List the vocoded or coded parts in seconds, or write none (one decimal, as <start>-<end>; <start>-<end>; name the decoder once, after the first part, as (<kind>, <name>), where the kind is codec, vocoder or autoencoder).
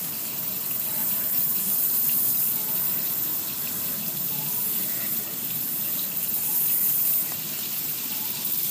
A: 1.0-2.6 (vocoder, BigVGAN v2); 3.3-7.4